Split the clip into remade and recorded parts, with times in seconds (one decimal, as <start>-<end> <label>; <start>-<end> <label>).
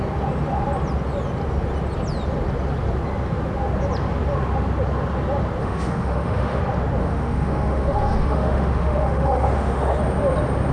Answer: 0.0-5.6 recorded; 5.6-6.6 remade; 6.6-7.0 recorded; 7.0-10.0 remade; 10.0-10.7 recorded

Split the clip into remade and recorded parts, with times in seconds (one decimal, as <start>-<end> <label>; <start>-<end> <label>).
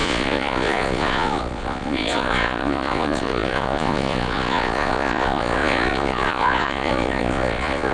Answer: 0.0-7.9 remade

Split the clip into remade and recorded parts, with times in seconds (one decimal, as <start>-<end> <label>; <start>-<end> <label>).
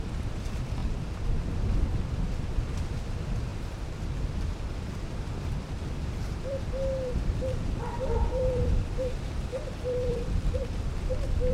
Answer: 0.0-0.8 remade; 0.8-2.4 recorded; 2.4-11.5 remade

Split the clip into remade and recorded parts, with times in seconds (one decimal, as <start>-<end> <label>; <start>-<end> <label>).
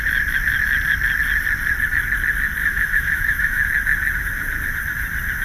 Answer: 0.0-2.6 recorded; 2.6-3.6 remade; 3.6-5.4 recorded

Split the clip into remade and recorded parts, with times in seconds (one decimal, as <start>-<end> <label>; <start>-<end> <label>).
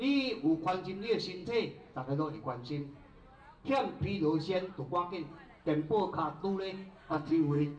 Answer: 0.0-7.0 recorded; 7.0-7.8 remade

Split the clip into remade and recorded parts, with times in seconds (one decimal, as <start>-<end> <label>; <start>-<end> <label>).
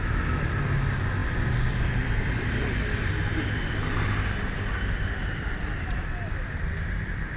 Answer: 0.0-1.2 recorded; 1.2-2.8 remade; 2.8-7.4 recorded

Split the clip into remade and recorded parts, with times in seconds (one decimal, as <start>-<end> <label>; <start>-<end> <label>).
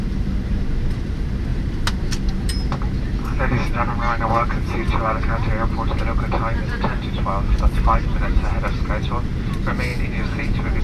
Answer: 0.0-9.9 recorded; 9.9-10.8 remade